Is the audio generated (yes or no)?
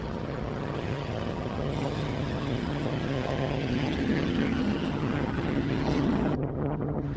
yes